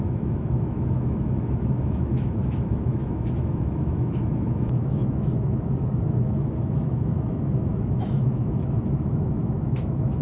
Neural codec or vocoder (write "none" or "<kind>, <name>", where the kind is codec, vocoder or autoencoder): autoencoder, DAC-VAE